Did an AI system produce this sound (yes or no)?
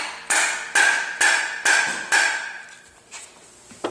no